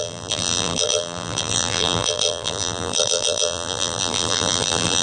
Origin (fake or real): fake